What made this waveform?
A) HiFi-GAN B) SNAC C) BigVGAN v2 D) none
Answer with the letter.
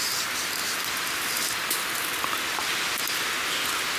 D